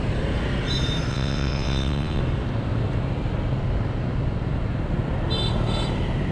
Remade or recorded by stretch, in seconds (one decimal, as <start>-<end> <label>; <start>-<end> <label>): 0.0-1.1 recorded; 1.1-2.2 remade; 2.2-6.3 recorded